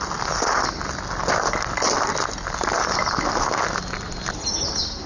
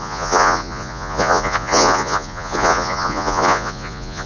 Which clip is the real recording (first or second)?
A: first